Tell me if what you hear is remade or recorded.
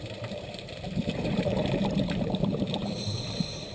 remade